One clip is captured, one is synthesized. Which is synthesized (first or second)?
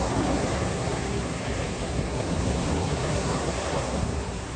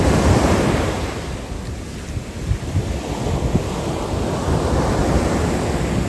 first